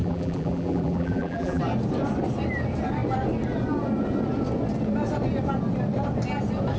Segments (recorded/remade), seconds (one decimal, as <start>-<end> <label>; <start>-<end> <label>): 0.0-1.6 remade; 1.6-6.8 recorded

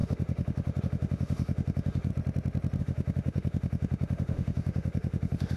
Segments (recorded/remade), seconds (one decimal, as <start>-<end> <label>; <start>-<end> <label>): 0.0-2.1 remade; 2.1-2.8 recorded; 2.8-5.6 remade

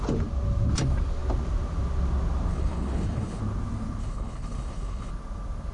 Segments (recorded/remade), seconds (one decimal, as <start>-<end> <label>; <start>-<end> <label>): 0.0-2.5 recorded; 2.5-3.4 remade; 3.4-4.0 recorded; 4.0-5.1 remade; 5.1-5.7 recorded

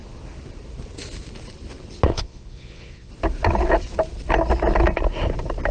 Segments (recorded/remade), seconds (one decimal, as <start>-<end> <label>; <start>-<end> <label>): 0.0-2.1 recorded; 2.1-3.1 remade; 3.1-5.7 recorded